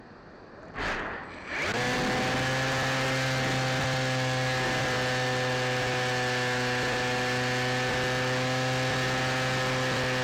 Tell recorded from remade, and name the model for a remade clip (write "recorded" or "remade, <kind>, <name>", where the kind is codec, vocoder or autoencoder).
recorded